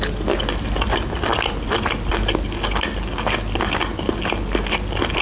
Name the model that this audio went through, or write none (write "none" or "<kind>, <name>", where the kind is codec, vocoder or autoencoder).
none